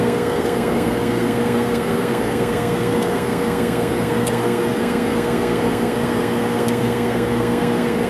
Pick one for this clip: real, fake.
fake